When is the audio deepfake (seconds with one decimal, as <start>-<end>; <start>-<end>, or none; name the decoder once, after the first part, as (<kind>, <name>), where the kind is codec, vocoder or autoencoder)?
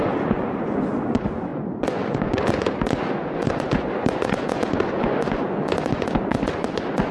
0.0-7.1 (vocoder, Vocos)